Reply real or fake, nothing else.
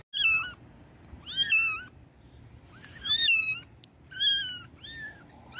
real